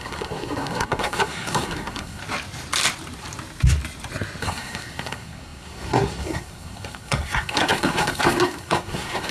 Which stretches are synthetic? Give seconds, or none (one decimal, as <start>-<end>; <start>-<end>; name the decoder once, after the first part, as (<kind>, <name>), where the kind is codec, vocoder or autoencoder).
0.0-2.2 (codec, SNAC); 4.4-9.3